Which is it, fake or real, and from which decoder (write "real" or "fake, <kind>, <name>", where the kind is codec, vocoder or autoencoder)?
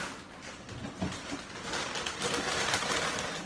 real